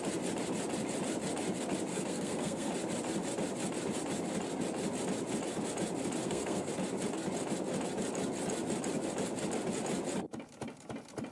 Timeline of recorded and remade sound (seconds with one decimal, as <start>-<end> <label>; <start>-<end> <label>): 0.0-1.9 recorded; 1.9-2.7 remade; 2.7-6.2 recorded; 6.2-6.7 remade; 6.7-11.3 recorded